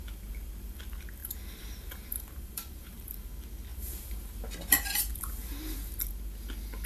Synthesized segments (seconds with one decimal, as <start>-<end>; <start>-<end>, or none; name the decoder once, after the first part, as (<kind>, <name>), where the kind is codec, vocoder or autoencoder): 1.2-3.3 (vocoder, BigVGAN v2); 3.7-4.3; 5.1-6.1